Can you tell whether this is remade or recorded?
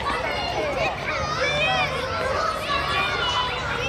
recorded